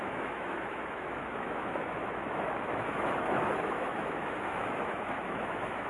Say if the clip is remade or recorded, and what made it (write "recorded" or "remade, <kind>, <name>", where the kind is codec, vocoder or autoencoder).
remade, autoencoder, DAC-VAE